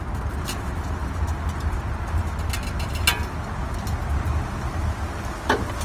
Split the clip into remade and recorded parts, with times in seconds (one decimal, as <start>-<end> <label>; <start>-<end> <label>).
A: 0.0-5.8 recorded